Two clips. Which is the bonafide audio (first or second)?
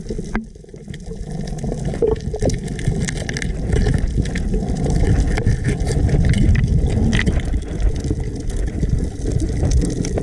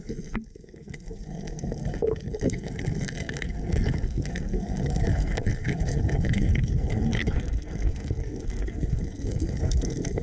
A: first